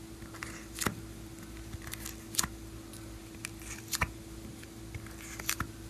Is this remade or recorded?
recorded